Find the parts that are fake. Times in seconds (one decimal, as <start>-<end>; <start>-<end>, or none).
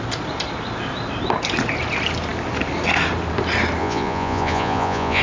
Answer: 3.8-5.2